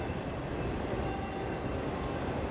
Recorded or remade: recorded